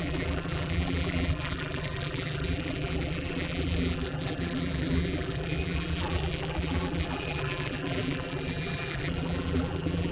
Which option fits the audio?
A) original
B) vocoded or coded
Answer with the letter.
B